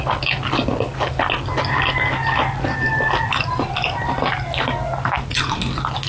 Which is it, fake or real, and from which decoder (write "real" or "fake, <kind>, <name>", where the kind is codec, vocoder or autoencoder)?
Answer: real